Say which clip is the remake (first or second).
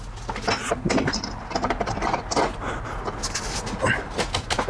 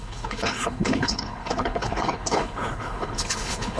second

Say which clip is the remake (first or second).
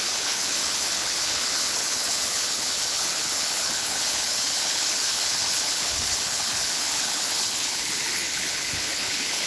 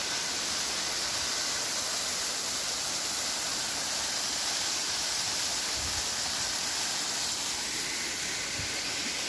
first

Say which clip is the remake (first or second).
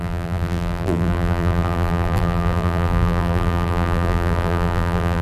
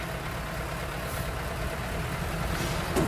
first